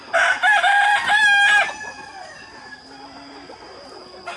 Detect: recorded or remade recorded